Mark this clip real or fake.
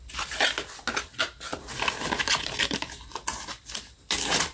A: real